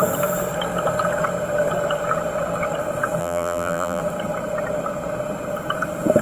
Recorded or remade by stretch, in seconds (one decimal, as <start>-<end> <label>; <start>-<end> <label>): 0.0-3.2 recorded; 3.2-4.0 remade; 4.0-6.2 recorded